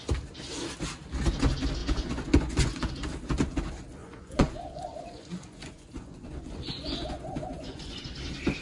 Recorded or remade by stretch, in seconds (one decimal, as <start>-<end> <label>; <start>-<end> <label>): 0.0-1.8 recorded; 1.8-2.9 remade; 2.9-4.0 recorded; 4.0-8.0 remade; 8.0-8.6 recorded